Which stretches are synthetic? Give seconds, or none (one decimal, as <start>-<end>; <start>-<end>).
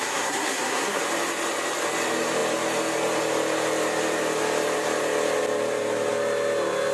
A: 0.0-1.0